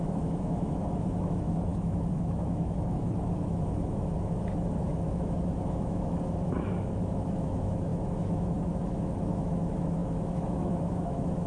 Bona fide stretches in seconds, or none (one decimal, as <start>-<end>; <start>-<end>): none